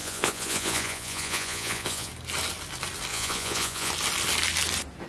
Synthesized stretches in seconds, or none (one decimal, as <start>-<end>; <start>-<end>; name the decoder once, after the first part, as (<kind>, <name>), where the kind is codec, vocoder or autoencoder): 0.0-2.1 (vocoder, Vocos); 3.1-3.9